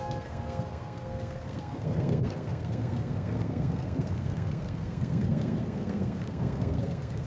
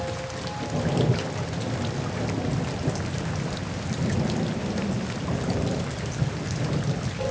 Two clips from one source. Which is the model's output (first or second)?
first